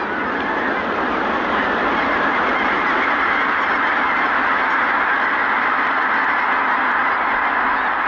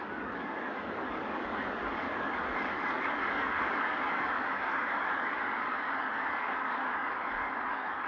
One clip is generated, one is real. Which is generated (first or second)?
second